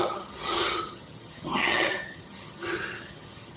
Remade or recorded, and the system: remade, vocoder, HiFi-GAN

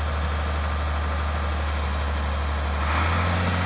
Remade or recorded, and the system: recorded